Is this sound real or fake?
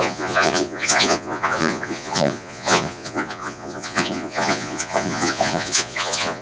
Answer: fake